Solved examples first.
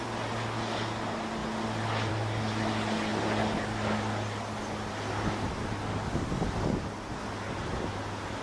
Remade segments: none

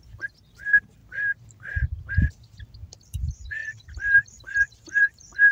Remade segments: 0.0-1.0; 3.1-3.6; 4.3-5.5

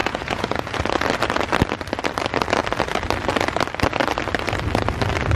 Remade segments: 0.0-0.8

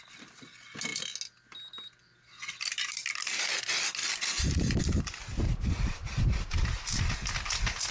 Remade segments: 0.0-0.9; 1.4-6.0

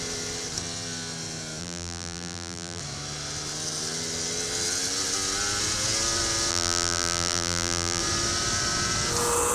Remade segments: 1.6-2.8; 6.5-8.0

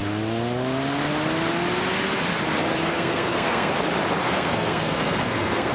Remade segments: 2.9-3.7; 4.2-5.7